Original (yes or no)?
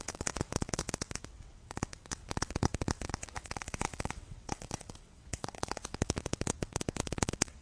no